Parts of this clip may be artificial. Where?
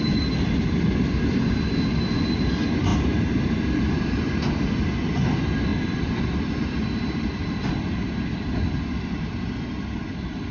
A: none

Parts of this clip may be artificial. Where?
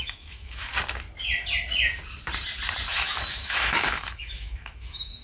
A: 0.0-0.7 (autoencoder, DAC-VAE); 2.9-5.2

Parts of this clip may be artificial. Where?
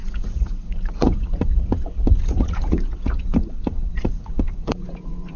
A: 0.0-5.4 (vocoder, Vocos)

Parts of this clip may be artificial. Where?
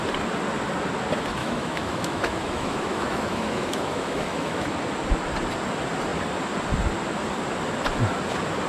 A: 1.4-4.6 (autoencoder, DAC-VAE)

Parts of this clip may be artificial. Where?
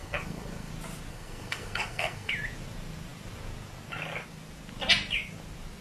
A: 0.0-0.7 (codec, SNAC); 1.1-2.3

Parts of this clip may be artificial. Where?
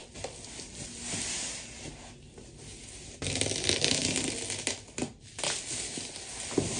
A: none